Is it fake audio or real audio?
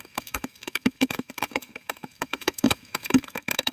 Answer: fake